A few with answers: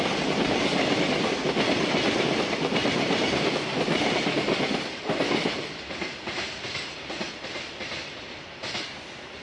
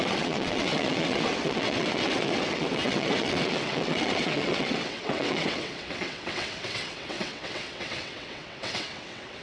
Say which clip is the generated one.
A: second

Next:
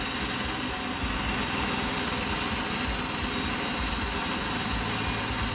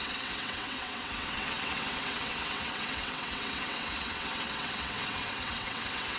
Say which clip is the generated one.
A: second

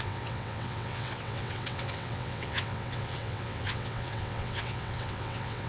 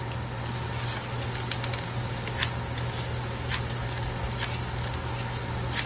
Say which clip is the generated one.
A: first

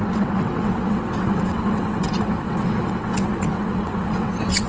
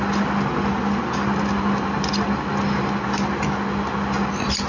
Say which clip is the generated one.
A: first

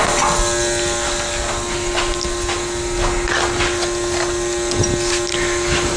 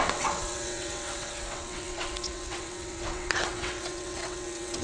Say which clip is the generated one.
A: second